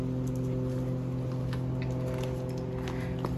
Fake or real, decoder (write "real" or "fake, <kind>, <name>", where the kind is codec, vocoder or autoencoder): real